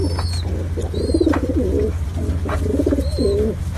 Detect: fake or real real